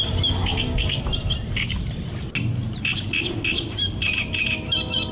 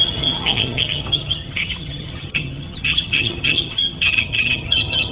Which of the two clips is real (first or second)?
first